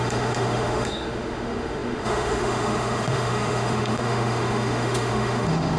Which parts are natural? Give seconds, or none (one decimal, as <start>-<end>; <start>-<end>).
none